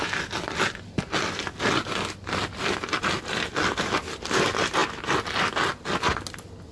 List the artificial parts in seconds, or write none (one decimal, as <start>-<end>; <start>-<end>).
none

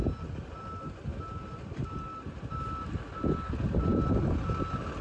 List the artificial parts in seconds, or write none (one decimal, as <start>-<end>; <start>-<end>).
none

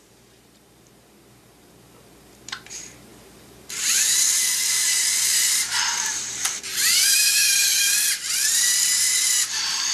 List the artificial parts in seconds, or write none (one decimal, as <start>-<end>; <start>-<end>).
0.0-9.9

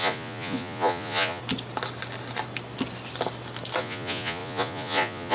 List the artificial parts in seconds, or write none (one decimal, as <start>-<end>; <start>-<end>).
0.0-1.4; 3.8-5.3

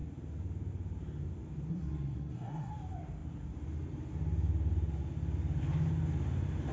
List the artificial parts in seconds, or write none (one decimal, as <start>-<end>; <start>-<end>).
1.7-2.7

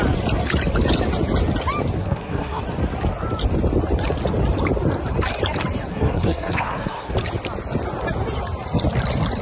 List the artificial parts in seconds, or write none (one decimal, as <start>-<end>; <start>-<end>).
2.0-2.6; 5.9-7.1

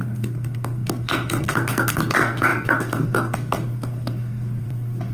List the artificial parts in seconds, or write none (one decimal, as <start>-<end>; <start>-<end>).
0.0-5.1

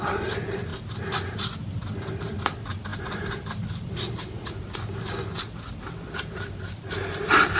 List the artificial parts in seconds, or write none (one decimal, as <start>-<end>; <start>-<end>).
0.0-0.7; 1.8-7.6